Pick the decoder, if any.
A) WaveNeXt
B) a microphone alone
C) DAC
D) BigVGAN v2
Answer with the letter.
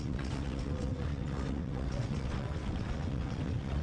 A